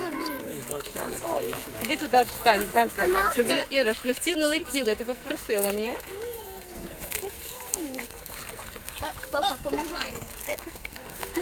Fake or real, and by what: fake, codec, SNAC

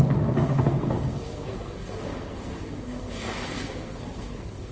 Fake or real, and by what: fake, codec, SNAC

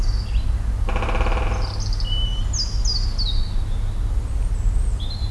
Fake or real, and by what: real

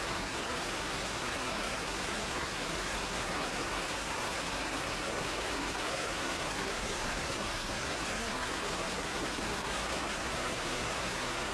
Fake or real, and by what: fake, codec, SNAC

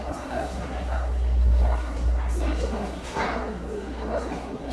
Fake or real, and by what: fake, codec, SNAC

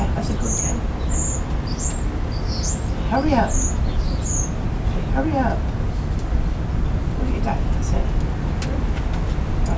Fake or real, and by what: real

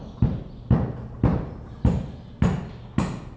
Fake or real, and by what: real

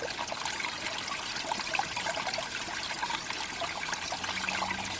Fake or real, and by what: real